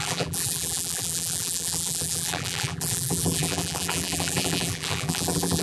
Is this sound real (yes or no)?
no